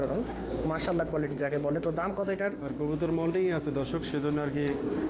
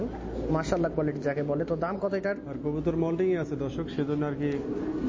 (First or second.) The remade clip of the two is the first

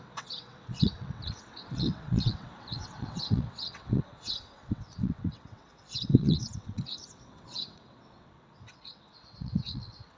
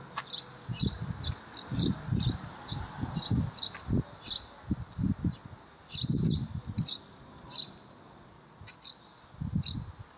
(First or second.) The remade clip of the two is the first